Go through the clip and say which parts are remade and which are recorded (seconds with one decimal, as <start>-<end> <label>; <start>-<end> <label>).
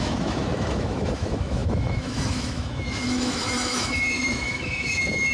0.0-5.3 remade